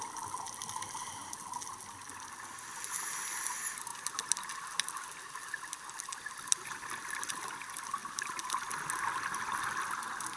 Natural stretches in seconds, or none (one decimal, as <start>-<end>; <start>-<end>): 0.0-10.4